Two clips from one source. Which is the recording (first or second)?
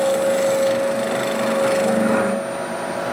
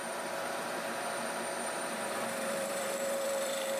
first